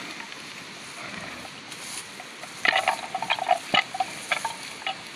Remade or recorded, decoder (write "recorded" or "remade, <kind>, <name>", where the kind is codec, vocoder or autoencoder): recorded